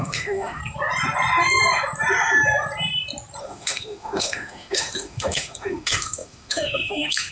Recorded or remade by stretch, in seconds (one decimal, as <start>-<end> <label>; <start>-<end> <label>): 0.0-0.6 remade; 0.6-3.4 recorded; 3.4-7.3 remade